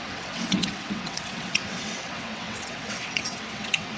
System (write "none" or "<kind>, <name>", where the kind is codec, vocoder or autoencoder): vocoder, WaveNeXt